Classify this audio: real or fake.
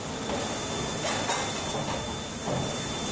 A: real